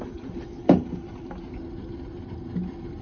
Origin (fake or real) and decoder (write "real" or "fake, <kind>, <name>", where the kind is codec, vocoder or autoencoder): real